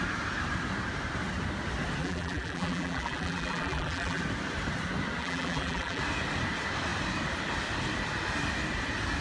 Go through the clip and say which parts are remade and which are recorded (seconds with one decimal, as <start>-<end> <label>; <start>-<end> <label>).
0.0-2.0 recorded; 2.0-4.2 remade; 4.2-5.2 recorded; 5.2-6.0 remade; 6.0-9.2 recorded